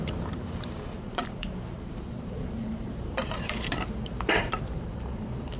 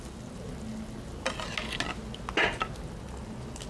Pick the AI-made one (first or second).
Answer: first